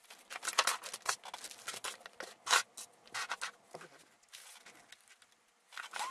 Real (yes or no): yes